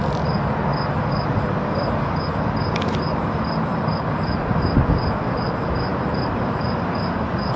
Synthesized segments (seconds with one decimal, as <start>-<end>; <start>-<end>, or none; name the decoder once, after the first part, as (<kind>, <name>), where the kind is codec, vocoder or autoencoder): 3.7-4.7 (vocoder, BigVGAN v2); 5.9-6.8